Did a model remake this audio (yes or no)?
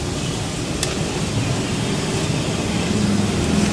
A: no